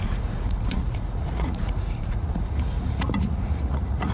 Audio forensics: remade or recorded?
remade